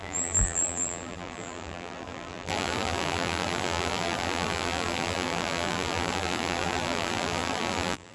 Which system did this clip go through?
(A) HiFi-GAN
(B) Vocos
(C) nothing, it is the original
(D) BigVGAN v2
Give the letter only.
D